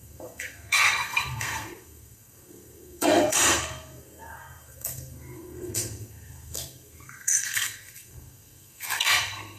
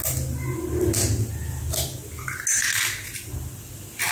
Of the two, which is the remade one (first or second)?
first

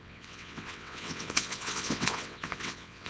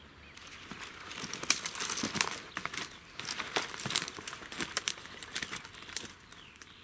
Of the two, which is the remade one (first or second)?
first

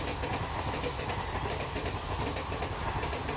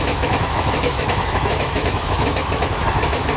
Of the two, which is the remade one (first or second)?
second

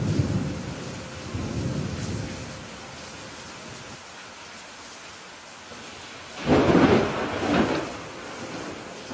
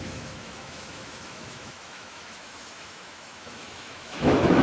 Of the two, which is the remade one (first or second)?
second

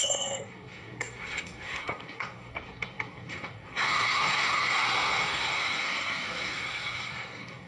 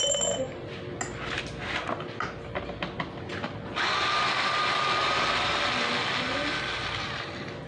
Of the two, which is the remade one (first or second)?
first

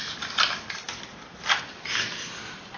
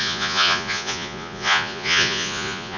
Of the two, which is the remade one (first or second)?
second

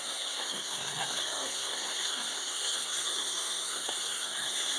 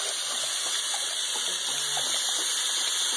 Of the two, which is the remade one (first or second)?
first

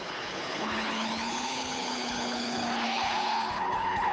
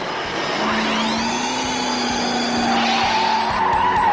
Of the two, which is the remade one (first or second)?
first